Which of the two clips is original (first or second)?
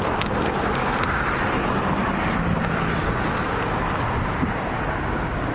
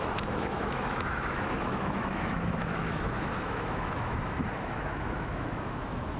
first